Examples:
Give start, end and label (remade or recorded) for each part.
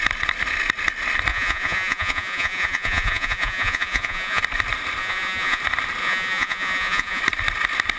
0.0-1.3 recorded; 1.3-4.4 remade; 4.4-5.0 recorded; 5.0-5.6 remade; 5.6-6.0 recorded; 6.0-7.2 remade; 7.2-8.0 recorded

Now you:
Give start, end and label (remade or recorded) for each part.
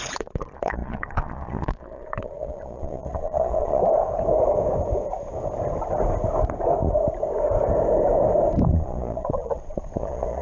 0.0-3.8 remade; 3.8-8.7 recorded; 8.7-10.4 remade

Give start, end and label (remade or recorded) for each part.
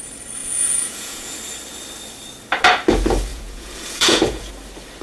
0.0-0.4 recorded; 0.4-1.4 remade; 1.4-3.3 recorded; 3.3-4.5 remade; 4.5-5.0 recorded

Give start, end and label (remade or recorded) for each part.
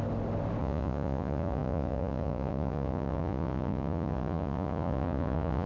0.0-0.6 recorded; 0.6-5.7 remade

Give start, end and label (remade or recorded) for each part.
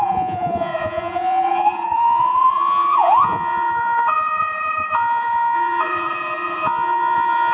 0.0-7.5 remade